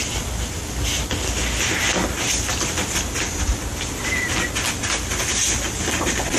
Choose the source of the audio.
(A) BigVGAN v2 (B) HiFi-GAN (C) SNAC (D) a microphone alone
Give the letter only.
D